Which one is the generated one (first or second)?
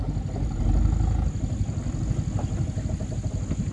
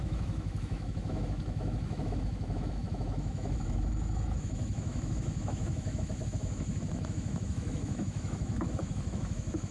second